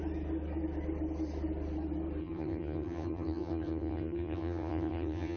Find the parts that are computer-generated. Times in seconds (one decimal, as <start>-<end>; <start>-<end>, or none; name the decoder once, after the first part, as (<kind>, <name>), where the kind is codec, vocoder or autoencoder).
2.2-5.4 (vocoder, HiFi-GAN)